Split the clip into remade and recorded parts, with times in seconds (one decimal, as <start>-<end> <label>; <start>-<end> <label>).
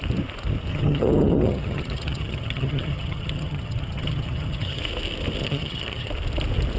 0.0-0.7 recorded; 0.7-4.8 remade; 4.8-5.4 recorded; 5.4-6.1 remade; 6.1-6.8 recorded